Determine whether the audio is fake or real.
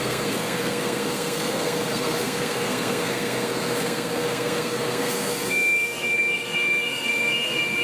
fake